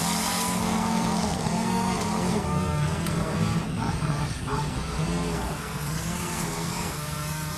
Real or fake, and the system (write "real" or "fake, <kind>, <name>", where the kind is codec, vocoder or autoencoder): fake, codec, SNAC